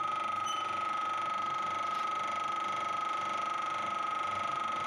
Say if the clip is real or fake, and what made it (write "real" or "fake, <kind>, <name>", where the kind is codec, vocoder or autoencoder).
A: real